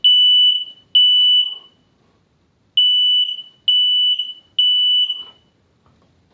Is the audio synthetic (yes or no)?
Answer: no